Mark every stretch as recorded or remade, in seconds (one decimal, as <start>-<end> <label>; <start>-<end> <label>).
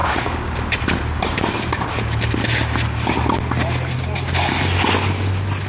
0.0-0.6 remade; 0.6-5.7 recorded